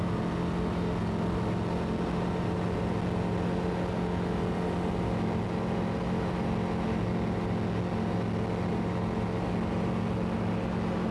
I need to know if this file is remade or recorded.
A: recorded